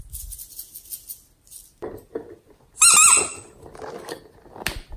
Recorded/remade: recorded